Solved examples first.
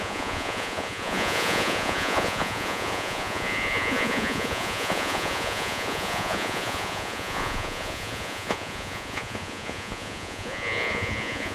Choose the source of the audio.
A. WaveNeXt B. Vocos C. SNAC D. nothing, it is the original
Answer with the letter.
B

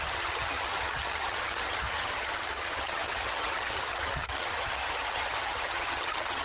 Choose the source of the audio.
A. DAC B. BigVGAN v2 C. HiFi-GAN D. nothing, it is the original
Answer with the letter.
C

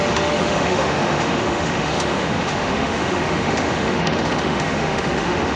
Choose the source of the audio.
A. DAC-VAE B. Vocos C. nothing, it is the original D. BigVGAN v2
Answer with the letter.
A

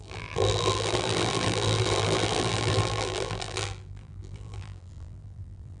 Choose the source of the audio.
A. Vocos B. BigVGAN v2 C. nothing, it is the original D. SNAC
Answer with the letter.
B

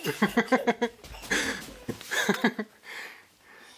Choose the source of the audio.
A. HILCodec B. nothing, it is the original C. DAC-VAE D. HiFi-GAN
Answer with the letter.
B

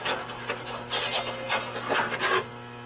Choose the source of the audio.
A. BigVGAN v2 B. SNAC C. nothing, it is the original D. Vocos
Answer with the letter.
C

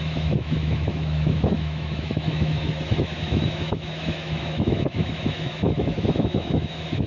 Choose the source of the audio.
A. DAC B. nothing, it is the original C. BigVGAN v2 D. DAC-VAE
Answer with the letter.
D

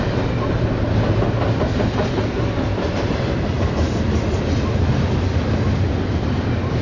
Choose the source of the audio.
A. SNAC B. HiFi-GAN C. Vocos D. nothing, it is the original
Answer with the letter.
D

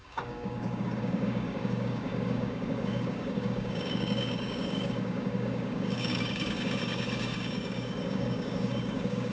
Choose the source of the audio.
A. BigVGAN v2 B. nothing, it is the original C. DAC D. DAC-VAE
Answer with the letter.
C